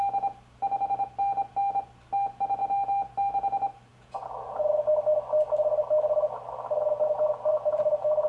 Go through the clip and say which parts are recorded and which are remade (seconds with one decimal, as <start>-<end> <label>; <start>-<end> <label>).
0.0-3.9 recorded; 3.9-4.7 remade; 4.7-7.5 recorded; 7.5-8.3 remade